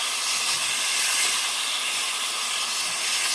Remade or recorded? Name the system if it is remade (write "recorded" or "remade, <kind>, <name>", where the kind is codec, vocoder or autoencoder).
recorded